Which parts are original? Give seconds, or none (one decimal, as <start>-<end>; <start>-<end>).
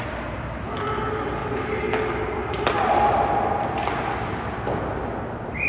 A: 0.0-5.7